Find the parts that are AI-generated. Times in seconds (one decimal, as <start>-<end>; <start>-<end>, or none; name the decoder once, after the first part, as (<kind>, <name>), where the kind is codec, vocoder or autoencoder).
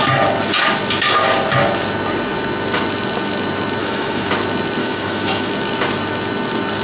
3.8-4.3 (autoencoder, DAC-VAE); 4.8-5.5